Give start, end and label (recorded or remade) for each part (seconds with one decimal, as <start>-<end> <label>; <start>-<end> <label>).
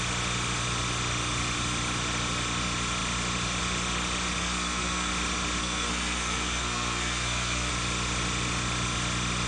0.0-4.4 recorded; 4.4-5.1 remade; 5.1-5.6 recorded; 5.6-7.7 remade; 7.7-9.5 recorded